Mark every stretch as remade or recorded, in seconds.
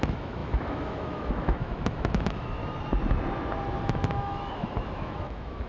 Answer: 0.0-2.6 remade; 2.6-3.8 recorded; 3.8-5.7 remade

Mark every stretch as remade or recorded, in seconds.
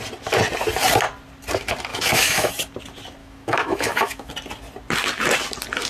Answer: 0.0-1.9 recorded; 1.9-2.5 remade; 2.5-3.2 recorded; 3.2-4.3 remade; 4.3-5.9 recorded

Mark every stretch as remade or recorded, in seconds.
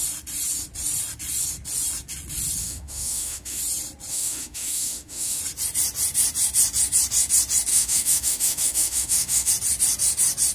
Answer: 0.0-2.6 recorded; 2.6-3.6 remade; 3.6-4.1 recorded; 4.1-5.4 remade; 5.4-7.7 recorded; 7.7-9.5 remade; 9.5-10.5 recorded